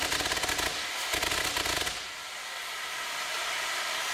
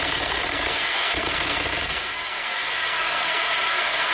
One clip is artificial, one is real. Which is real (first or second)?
first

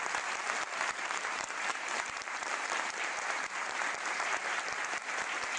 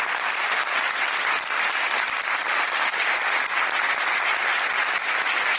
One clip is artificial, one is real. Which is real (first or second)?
second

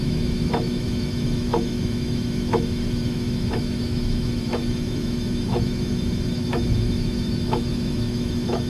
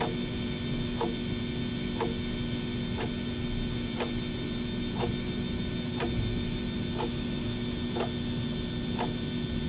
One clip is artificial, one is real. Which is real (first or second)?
second